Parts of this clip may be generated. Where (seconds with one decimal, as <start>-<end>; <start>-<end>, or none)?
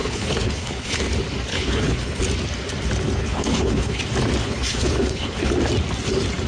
0.0-1.0; 1.5-2.2; 3.2-4.0; 4.4-5.5